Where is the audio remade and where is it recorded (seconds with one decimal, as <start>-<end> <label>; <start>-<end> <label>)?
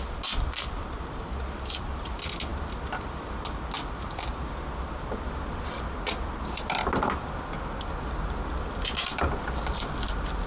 0.0-10.5 recorded